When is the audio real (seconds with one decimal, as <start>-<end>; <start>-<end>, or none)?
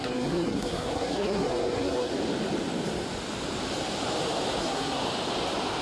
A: 2.1-4.6; 5.0-5.8